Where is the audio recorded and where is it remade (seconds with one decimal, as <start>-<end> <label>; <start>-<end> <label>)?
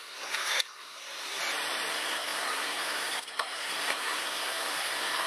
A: 0.0-1.4 remade; 1.4-1.9 recorded; 1.9-5.3 remade